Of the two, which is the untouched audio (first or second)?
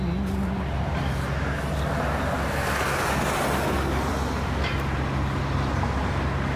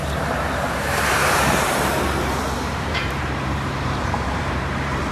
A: first